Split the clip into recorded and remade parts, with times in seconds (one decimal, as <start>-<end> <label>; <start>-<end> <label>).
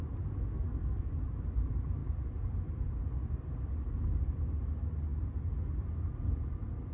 0.0-0.5 recorded; 0.5-1.1 remade; 1.1-6.9 recorded